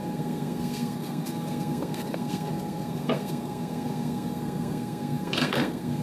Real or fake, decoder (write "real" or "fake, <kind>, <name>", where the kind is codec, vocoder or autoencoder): fake, codec, SNAC